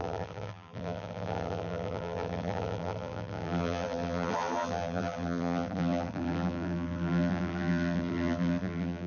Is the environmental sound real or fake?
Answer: fake